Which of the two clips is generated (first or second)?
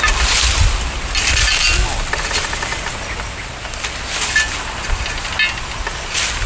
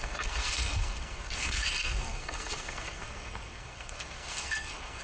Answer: second